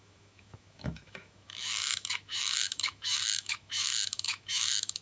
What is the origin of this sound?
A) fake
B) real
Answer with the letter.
A